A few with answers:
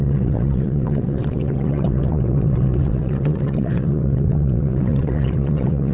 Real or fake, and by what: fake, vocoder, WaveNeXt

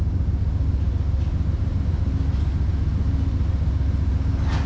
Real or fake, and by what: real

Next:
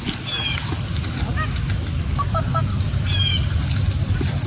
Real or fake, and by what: real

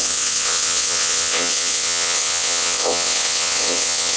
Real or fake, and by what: fake, vocoder, WaveNeXt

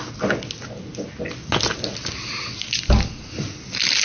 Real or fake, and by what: real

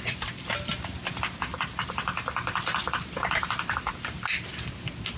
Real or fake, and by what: real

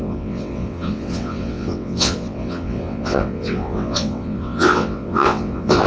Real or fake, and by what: fake, vocoder, WaveNeXt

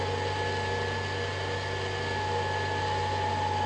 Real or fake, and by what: real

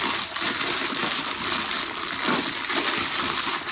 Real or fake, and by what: real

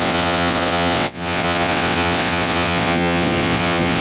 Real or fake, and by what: fake, vocoder, WaveNeXt